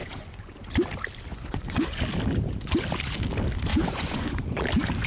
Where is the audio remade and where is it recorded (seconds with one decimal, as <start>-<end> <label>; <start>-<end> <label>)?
0.0-0.6 remade; 0.6-1.3 recorded; 1.3-2.0 remade; 2.0-3.7 recorded; 3.7-4.6 remade; 4.6-5.1 recorded